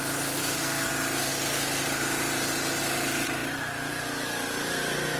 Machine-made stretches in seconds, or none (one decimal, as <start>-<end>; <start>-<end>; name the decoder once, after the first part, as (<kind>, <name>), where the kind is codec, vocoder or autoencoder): 0.4-0.9 (codec, SNAC)